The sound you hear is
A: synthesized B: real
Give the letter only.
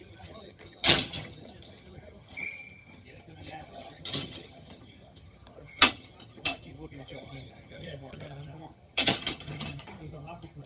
A